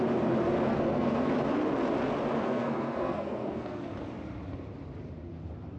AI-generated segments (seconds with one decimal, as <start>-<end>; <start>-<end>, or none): 0.7-1.3; 2.4-3.9

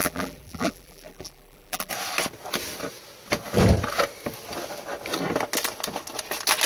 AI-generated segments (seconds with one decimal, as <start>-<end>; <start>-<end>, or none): 0.0-1.9

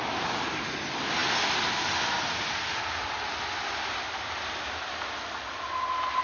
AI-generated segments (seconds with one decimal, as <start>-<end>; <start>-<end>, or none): none

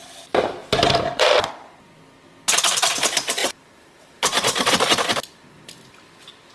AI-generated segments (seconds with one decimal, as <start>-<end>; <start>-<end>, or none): 0.6-1.5; 3.4-4.7

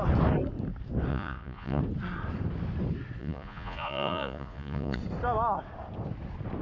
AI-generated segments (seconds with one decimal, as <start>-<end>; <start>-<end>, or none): 1.1-1.8; 3.2-5.0

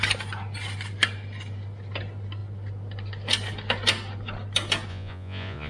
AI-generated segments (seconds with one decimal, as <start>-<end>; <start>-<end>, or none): 4.9-5.7

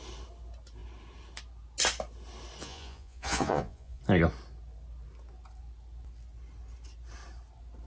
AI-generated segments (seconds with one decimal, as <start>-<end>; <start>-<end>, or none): 2.6-4.0

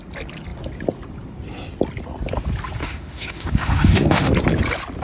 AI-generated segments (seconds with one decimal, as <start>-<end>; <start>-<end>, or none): 2.8-4.3